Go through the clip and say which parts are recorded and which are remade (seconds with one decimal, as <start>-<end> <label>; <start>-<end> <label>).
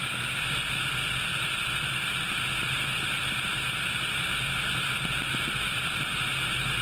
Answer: 0.0-6.8 recorded